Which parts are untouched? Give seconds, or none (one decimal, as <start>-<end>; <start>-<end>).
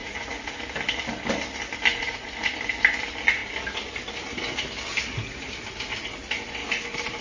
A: 0.6-1.9; 2.5-7.2